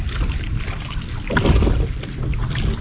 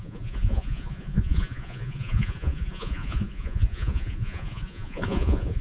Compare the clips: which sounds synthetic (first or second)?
second